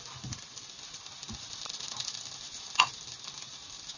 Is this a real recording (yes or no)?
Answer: yes